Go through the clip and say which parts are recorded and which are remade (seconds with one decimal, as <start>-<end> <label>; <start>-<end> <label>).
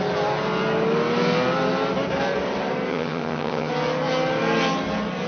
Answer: 0.0-2.9 recorded; 2.9-3.7 remade; 3.7-5.3 recorded